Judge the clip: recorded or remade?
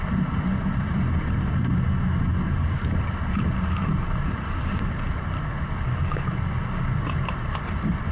recorded